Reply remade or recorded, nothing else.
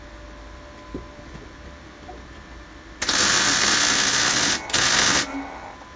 recorded